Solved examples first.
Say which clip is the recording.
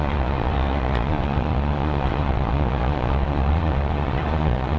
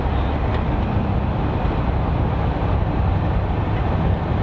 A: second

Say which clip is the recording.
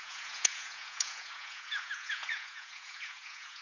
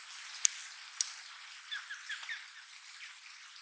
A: second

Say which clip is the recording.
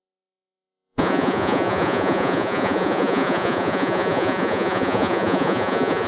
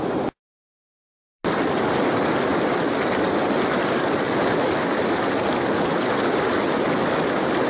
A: second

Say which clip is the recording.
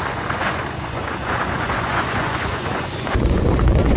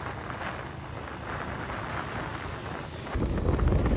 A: second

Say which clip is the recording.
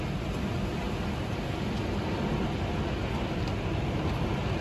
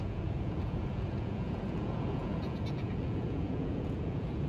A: first